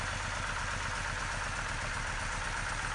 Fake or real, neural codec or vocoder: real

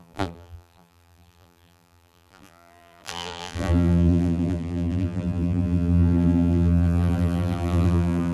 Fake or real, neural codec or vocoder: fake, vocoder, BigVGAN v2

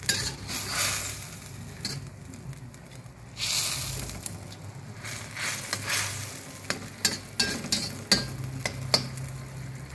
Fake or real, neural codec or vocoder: real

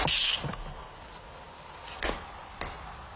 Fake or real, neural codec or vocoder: real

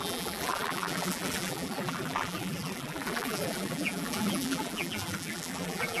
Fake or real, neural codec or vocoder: fake, vocoder, BigVGAN v2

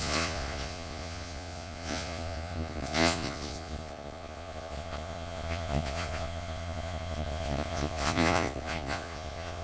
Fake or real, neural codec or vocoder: fake, vocoder, Vocos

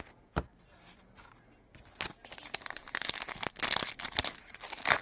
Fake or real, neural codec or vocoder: real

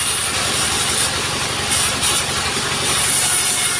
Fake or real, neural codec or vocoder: real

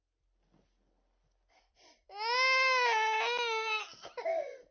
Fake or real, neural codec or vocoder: real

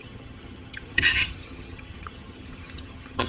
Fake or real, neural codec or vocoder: fake, vocoder, HiFi-GAN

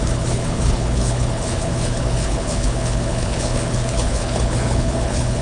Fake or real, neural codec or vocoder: fake, codec, HILCodec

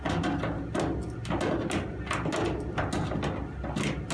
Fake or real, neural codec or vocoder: real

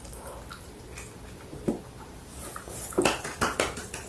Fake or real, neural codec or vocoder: real